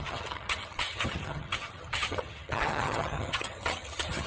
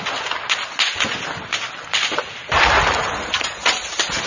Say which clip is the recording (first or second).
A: second